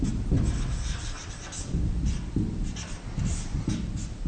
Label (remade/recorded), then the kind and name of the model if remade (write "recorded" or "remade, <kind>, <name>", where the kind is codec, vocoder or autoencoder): recorded